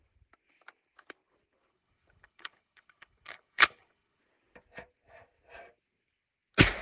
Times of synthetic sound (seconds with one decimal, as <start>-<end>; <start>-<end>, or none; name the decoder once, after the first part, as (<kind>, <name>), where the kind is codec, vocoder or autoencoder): 1.7-4.2 (codec, HILCodec)